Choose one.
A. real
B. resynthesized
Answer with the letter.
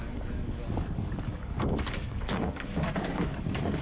B